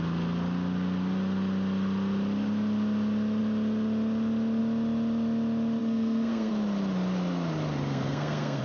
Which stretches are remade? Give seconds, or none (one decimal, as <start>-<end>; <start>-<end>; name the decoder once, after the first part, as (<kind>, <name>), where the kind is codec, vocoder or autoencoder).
5.8-6.5 (codec, SNAC); 7.8-8.6